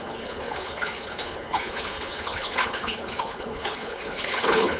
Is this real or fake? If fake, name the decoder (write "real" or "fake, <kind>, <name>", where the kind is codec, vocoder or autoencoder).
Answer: fake, codec, HILCodec